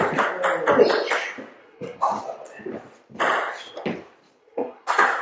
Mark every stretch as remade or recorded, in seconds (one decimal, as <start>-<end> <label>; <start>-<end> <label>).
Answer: 0.0-1.6 recorded; 1.6-2.2 remade; 2.2-4.4 recorded; 4.4-5.2 remade